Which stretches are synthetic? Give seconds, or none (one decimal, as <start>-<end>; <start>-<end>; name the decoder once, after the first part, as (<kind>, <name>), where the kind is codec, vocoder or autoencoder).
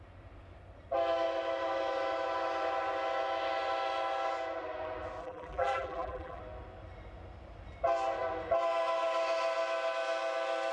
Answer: 5.2-6.4 (vocoder, BigVGAN v2)